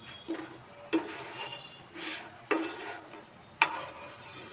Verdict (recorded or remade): recorded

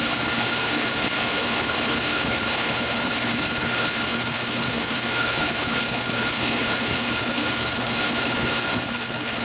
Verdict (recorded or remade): remade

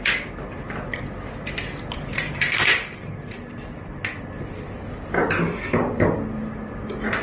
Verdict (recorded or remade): recorded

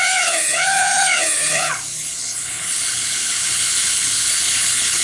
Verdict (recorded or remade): remade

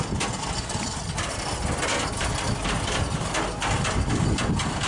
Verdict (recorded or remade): recorded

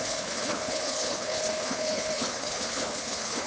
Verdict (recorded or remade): remade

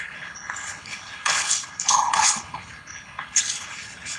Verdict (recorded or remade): remade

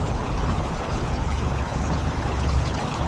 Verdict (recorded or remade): remade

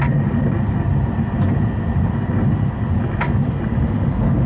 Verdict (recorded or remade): recorded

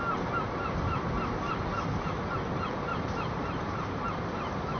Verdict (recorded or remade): recorded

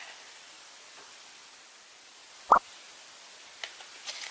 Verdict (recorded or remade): recorded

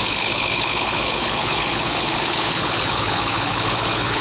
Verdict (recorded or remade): remade